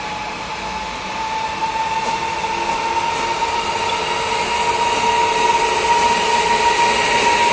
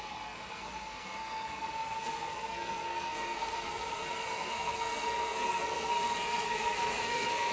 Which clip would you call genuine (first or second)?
first